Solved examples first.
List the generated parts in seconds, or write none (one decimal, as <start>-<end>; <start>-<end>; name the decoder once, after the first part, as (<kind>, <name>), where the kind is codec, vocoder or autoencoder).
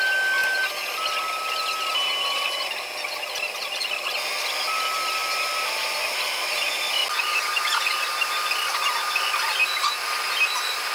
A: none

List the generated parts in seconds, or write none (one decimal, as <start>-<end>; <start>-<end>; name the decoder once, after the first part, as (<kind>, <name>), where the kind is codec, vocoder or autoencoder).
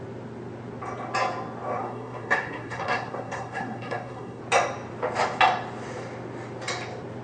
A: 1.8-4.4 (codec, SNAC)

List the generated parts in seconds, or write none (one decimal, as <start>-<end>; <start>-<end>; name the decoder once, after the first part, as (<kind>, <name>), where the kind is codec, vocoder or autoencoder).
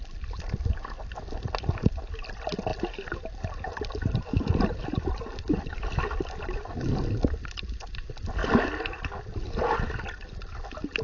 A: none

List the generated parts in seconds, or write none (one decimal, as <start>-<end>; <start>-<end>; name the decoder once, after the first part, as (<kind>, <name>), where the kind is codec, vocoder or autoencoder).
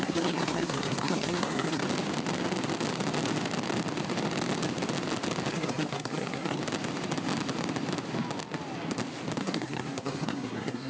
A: 0.0-1.8 (codec, SNAC); 5.5-6.6; 9.4-10.9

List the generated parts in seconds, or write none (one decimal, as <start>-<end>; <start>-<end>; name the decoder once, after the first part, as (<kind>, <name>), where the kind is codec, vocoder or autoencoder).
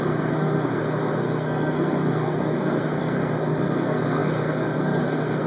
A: 0.0-5.5 (codec, SNAC)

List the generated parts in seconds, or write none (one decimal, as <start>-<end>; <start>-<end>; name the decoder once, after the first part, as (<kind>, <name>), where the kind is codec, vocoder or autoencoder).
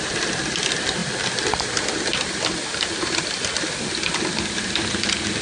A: none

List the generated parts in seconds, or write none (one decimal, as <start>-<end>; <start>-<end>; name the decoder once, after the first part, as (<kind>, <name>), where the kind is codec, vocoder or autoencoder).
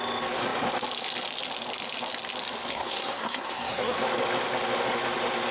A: 2.7-4.0 (codec, SNAC)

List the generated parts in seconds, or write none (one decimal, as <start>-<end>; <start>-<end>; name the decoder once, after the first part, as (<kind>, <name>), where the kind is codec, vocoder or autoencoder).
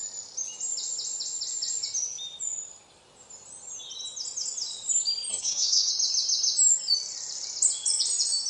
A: 5.3-5.9 (codec, SNAC)